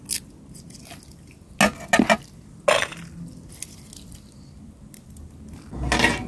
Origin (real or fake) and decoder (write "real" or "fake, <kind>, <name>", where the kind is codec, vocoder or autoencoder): real